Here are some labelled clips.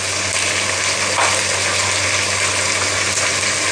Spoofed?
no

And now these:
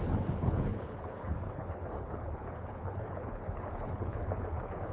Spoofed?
yes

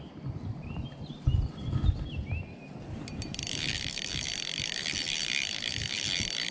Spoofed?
no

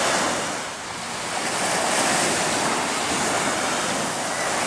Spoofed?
no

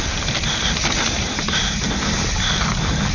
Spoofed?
no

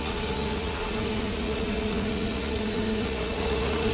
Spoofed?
yes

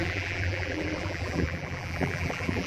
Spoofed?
yes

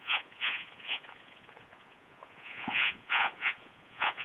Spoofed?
yes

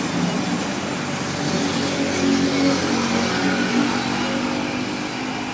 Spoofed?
no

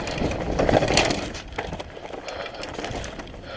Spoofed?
no